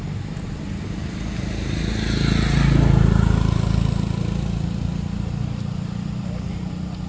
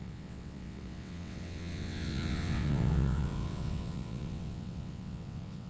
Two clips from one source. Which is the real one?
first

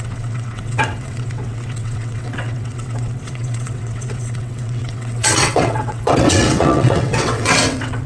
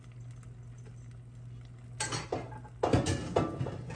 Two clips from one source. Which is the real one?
second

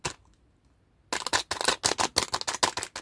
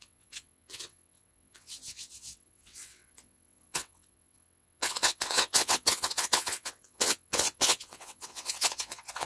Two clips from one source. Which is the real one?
first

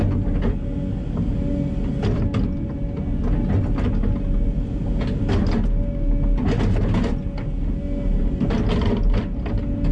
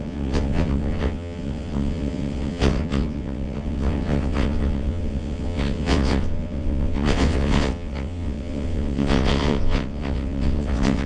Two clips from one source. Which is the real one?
first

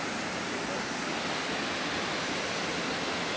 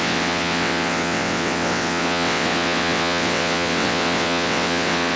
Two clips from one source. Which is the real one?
first